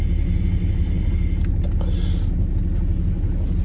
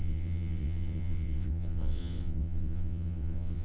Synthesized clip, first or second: second